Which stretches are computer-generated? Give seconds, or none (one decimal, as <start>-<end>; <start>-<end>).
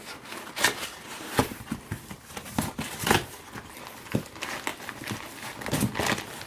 0.0-3.4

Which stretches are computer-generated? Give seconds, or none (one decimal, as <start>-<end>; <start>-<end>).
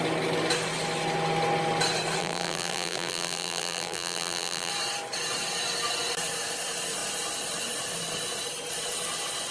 2.2-4.7